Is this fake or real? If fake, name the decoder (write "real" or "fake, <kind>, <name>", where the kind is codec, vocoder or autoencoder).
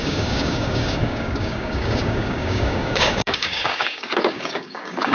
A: fake, codec, DAC